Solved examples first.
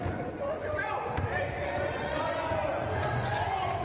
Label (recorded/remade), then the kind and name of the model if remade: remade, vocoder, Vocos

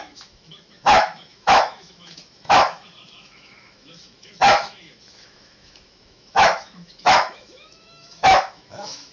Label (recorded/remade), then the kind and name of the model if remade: remade, autoencoder, DAC-VAE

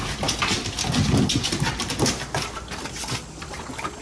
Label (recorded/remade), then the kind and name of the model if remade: recorded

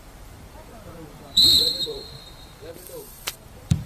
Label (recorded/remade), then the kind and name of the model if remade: remade, vocoder, BigVGAN v2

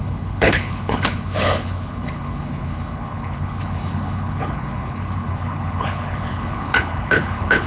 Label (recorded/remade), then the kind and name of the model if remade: remade, codec, HILCodec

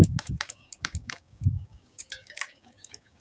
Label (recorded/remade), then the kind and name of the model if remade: remade, codec, DAC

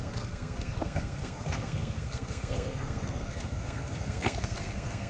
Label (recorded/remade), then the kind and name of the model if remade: remade, codec, SNAC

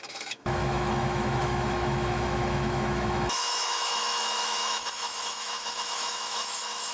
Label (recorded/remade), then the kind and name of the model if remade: remade, autoencoder, DAC-VAE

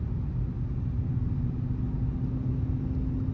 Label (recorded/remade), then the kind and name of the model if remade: recorded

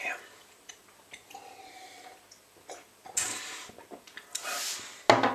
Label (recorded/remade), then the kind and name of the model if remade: recorded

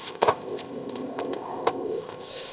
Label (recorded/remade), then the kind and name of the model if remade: remade, codec, ZipCodec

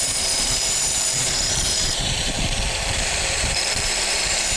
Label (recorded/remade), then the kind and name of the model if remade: remade, vocoder, BigVGAN v2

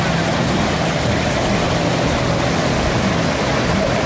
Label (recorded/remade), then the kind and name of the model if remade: recorded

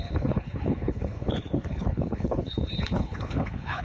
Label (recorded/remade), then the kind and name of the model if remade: remade, codec, HILCodec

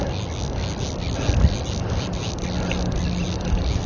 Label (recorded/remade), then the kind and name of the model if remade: recorded